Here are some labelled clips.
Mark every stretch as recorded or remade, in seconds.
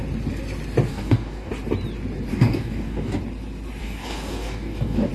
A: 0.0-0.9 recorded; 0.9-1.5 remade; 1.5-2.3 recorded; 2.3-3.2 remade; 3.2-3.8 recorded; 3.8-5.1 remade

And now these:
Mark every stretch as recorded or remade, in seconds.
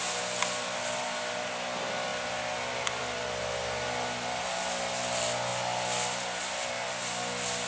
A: 0.0-7.7 recorded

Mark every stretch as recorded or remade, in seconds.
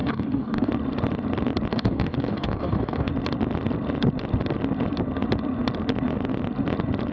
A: 0.0-0.7 remade; 0.7-1.7 recorded; 1.7-3.1 remade; 3.1-7.1 recorded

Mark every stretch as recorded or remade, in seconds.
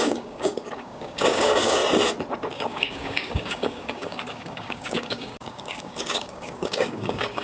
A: 0.0-1.8 remade; 1.8-2.5 recorded; 2.5-7.4 remade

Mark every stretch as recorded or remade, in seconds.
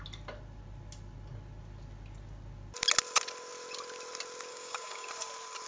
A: 0.0-4.5 recorded; 4.5-5.1 remade; 5.1-5.7 recorded